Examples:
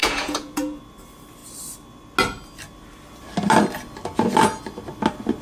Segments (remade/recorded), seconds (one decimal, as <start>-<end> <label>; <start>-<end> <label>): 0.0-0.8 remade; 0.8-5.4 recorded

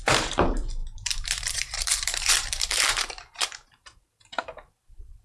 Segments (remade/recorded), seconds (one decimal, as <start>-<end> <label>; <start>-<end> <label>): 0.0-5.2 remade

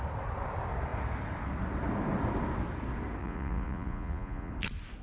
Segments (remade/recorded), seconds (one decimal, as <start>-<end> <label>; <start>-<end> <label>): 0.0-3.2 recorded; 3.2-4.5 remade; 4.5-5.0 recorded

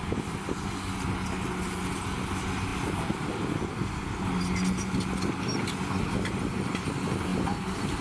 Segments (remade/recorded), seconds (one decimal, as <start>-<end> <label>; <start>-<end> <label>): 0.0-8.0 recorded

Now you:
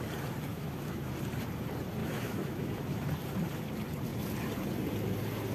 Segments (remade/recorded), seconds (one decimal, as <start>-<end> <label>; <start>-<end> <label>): 0.0-0.5 recorded; 0.5-1.1 remade; 1.1-2.0 recorded; 2.0-3.1 remade; 3.1-5.5 recorded

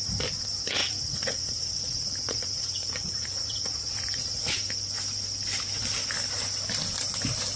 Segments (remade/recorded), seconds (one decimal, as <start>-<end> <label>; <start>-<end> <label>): 0.0-0.8 recorded; 0.8-4.5 remade; 4.5-7.6 recorded

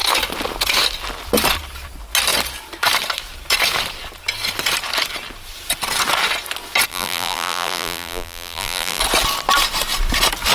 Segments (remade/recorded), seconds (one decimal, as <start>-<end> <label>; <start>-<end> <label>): 0.0-6.9 recorded; 6.9-9.0 remade; 9.0-10.5 recorded